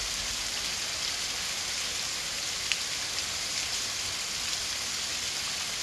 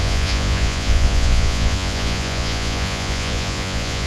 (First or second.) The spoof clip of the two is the second